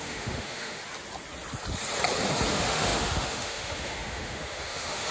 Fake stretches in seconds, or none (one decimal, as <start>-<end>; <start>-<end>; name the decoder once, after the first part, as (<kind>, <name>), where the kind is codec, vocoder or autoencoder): 0.0-0.8 (autoencoder, DAC-VAE); 2.5-5.1